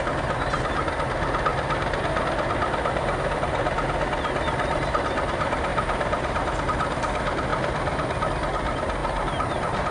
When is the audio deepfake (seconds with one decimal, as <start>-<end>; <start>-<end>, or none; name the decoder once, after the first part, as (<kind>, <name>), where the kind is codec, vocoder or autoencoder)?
1.5-2.2 (vocoder, BigVGAN v2); 5.7-6.6; 9.0-9.9